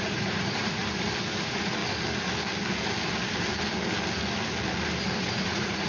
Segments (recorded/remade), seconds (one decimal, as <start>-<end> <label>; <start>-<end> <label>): 0.0-0.8 remade; 0.8-1.4 recorded; 1.4-1.8 remade; 1.8-5.3 recorded; 5.3-5.9 remade